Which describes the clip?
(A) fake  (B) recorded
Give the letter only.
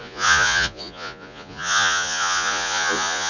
A